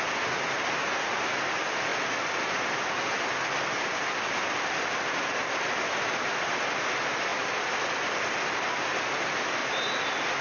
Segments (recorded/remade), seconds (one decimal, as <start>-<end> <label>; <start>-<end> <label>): 0.0-10.4 recorded